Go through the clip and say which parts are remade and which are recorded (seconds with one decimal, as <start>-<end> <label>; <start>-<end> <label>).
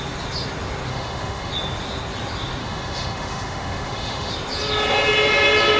0.0-0.9 recorded; 0.9-1.5 remade; 1.5-2.6 recorded; 2.6-4.3 remade; 4.3-5.8 recorded